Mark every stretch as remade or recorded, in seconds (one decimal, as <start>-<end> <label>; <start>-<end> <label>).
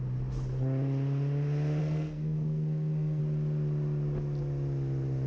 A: 0.0-1.8 recorded; 1.8-3.2 remade; 3.2-5.3 recorded